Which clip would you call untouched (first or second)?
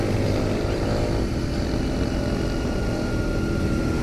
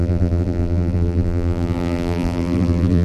first